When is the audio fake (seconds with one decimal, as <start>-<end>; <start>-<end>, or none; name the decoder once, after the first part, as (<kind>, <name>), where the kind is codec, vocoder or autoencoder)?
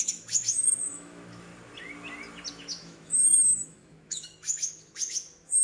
0.0-1.5 (autoencoder, DAC-VAE); 2.5-5.6